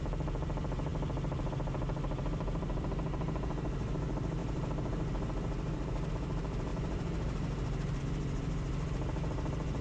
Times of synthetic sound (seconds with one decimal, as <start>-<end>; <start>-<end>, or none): 6.7-8.0